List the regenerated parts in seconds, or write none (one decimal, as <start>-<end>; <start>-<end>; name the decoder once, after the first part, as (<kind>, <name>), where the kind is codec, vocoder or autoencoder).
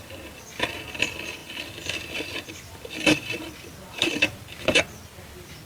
1.4-4.8 (vocoder, BigVGAN v2)